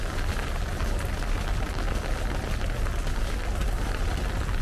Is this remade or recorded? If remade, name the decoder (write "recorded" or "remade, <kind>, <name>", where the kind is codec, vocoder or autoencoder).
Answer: recorded